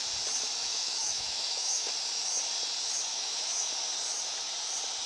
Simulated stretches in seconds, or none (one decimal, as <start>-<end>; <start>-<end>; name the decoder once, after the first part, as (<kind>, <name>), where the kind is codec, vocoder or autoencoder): 0.6-1.9 (autoencoder, DAC-VAE); 3.1-3.7

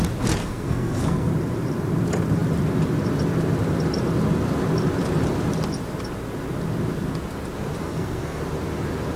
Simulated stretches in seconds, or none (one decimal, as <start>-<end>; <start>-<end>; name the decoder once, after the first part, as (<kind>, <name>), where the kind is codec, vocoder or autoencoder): 0.4-1.3 (codec, SNAC); 7.8-8.4

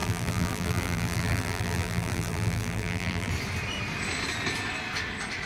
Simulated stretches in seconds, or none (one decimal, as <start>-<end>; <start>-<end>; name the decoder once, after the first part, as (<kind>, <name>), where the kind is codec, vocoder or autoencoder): 0.0-3.3 (vocoder, BigVGAN v2)

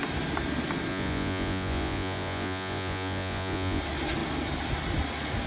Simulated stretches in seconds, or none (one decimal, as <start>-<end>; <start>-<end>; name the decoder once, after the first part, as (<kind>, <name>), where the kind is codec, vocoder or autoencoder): 0.9-3.8 (vocoder, Vocos)

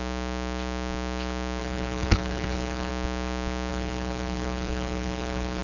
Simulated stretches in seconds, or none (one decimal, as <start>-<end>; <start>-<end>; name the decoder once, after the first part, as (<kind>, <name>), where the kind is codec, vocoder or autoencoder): 1.6-2.9 (codec, HILCodec); 3.7-5.6